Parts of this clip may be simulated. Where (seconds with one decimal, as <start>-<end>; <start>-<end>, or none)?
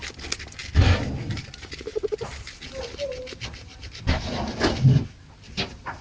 none